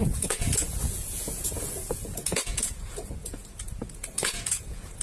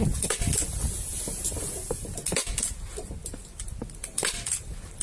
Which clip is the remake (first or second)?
first